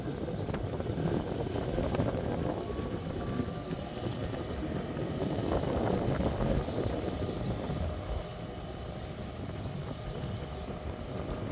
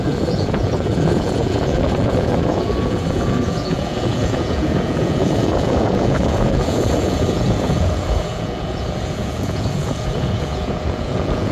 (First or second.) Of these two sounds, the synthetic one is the second